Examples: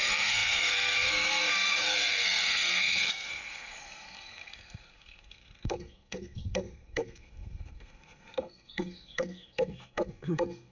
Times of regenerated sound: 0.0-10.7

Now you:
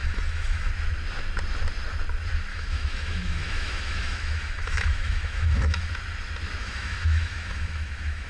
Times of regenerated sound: 0.0-0.7; 2.5-5.9; 6.6-8.3

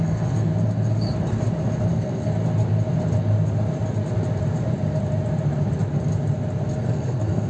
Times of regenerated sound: 0.0-0.5; 1.9-2.3; 6.8-7.5

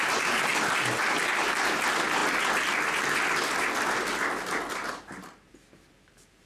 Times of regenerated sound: 0.0-0.5; 1.4-2.2; 4.7-6.5

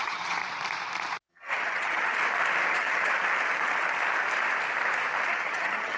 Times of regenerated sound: 0.0-0.4; 1.3-2.1; 2.7-3.1; 5.3-6.0

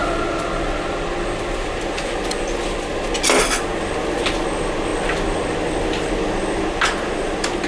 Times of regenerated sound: none